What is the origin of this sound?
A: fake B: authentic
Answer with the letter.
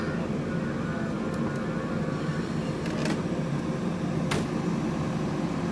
B